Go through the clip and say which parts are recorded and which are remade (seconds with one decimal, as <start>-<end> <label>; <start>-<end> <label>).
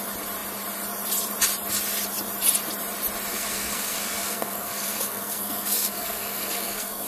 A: 0.0-3.3 recorded; 3.3-7.1 remade